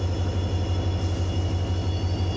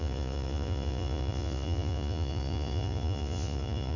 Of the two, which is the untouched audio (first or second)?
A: first